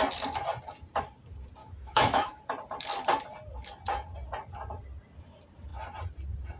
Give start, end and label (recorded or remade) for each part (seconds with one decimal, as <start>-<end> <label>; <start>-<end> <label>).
0.0-1.6 recorded; 1.6-2.4 remade; 2.4-6.6 recorded